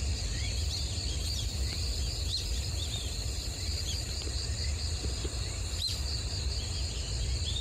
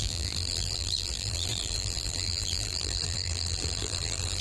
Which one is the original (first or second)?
first